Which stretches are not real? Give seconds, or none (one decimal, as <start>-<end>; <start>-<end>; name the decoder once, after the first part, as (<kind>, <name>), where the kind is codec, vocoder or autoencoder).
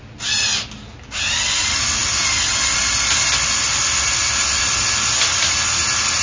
none